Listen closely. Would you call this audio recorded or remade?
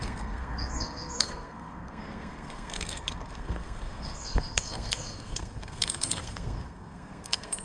remade